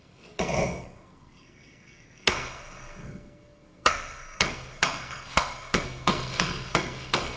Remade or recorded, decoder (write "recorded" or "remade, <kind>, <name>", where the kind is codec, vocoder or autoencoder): remade, codec, SNAC